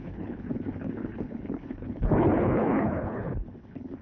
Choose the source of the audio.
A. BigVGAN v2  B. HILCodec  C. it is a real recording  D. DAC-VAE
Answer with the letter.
B